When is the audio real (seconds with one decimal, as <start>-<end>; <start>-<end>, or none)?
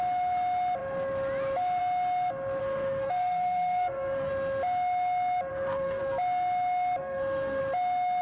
0.0-2.6; 4.3-5.5; 6.0-7.0; 7.6-8.2